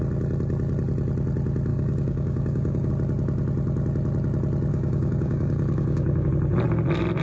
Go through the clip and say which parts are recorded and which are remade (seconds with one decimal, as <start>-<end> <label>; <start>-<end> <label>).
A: 0.0-1.7 recorded; 1.7-2.9 remade; 2.9-4.7 recorded; 4.7-6.3 remade; 6.3-7.2 recorded